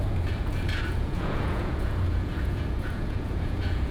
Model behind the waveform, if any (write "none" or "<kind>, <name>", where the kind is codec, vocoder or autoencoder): vocoder, Vocos